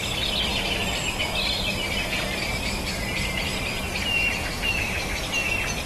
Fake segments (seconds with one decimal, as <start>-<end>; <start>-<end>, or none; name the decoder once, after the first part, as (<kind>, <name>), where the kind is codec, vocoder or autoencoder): 0.5-3.6 (vocoder, BigVGAN v2); 4.5-5.3